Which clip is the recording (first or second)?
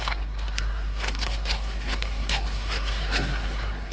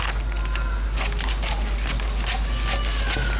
second